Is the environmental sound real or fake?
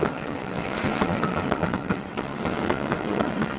fake